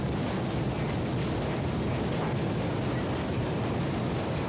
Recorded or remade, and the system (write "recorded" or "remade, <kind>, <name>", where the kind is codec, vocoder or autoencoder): recorded